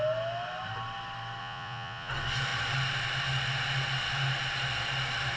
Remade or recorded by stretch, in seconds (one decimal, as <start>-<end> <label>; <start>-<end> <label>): 0.0-1.4 recorded; 1.4-2.1 remade; 2.1-5.4 recorded

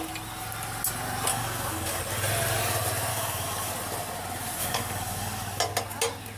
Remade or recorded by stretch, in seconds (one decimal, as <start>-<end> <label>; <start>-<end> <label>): 0.0-1.3 recorded; 1.3-2.0 remade; 2.0-3.1 recorded; 3.1-3.7 remade; 3.7-4.6 recorded; 4.6-5.6 remade; 5.6-6.4 recorded